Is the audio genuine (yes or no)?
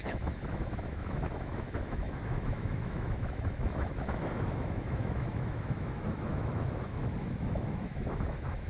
no